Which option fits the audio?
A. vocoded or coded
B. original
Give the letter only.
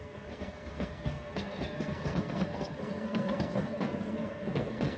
A